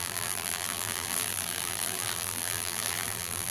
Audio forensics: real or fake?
fake